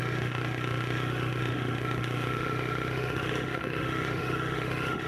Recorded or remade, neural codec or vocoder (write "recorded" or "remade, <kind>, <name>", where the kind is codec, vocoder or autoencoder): remade, autoencoder, DAC-VAE